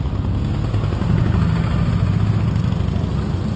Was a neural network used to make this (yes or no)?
no